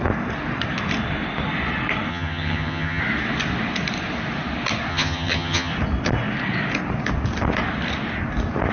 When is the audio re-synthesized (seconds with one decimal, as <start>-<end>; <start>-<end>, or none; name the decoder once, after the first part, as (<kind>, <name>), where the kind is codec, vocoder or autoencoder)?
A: 2.1-3.0 (vocoder, HiFi-GAN); 4.9-5.7